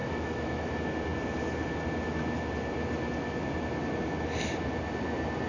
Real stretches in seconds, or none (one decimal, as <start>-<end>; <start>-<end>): 0.7-5.5